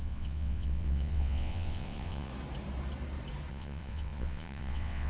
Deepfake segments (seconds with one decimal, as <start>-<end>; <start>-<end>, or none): 0.0-2.3; 3.5-5.1